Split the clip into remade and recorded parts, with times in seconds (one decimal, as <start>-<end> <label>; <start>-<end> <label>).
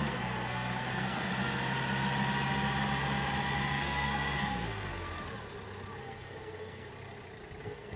0.0-1.3 remade; 1.3-3.6 recorded; 3.6-5.1 remade; 5.1-6.0 recorded; 6.0-6.9 remade; 6.9-7.6 recorded; 7.6-8.0 remade